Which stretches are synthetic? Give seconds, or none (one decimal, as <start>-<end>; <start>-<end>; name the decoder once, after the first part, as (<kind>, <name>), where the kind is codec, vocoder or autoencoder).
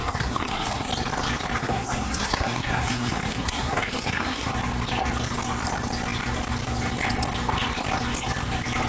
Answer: 0.0-0.9 (codec, SNAC); 1.6-4.5